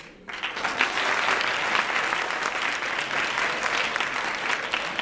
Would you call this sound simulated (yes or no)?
no